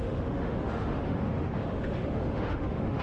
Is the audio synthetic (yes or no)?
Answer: yes